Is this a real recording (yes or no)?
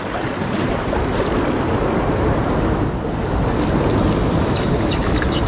yes